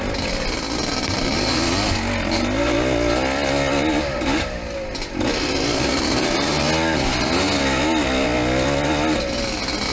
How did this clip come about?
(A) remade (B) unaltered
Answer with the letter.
B